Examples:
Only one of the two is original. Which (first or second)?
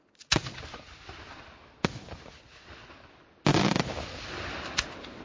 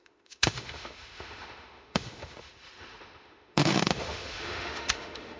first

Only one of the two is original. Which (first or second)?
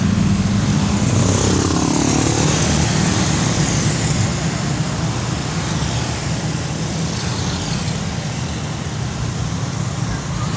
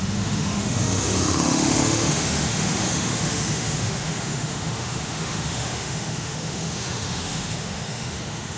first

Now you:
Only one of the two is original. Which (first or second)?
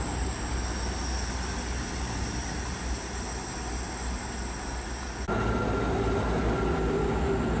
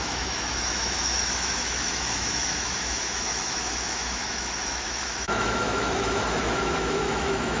first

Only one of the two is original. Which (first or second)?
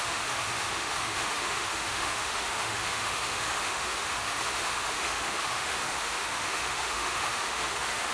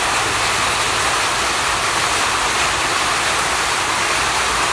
second